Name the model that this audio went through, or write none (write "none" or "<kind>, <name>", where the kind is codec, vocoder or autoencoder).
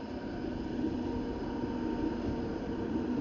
none